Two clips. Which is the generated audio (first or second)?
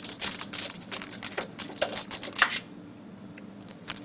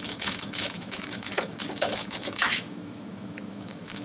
second